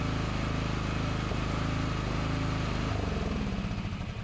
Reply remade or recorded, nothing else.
recorded